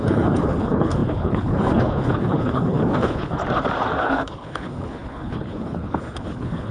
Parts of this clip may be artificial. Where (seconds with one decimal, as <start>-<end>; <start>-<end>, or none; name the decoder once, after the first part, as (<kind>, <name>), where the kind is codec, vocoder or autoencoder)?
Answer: 0.0-3.4 (codec, HILCodec); 4.0-6.7